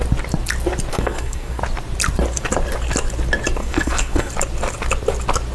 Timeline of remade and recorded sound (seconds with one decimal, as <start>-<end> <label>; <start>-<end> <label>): 0.0-0.9 recorded; 0.9-1.6 remade; 1.6-3.6 recorded; 3.6-4.3 remade; 4.3-5.5 recorded